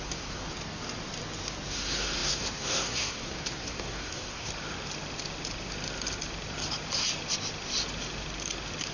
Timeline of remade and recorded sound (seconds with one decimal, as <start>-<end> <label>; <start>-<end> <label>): 0.0-0.4 remade; 0.4-1.7 recorded; 1.7-4.5 remade; 4.5-8.9 recorded